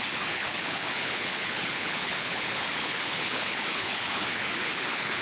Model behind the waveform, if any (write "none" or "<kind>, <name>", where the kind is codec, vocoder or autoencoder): codec, HILCodec